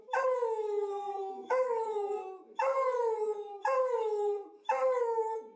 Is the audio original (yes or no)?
no